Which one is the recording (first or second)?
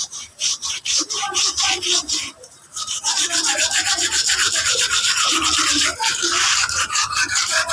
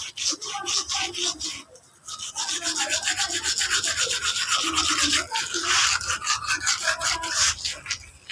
second